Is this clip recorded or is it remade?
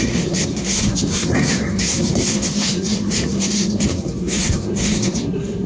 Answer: remade